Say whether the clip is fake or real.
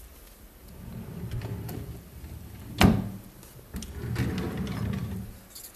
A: real